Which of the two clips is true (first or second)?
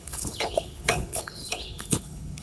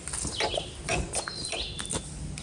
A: second